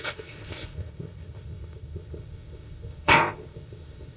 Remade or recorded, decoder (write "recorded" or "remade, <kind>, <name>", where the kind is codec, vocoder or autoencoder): remade, codec, ZipCodec